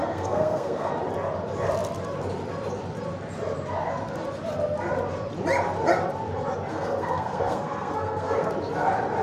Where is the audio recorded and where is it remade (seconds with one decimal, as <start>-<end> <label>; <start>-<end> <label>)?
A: 0.0-0.9 remade; 0.9-6.7 recorded; 6.7-8.5 remade; 8.5-9.2 recorded